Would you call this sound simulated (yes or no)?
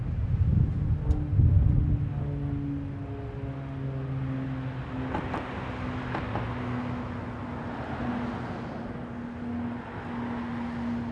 no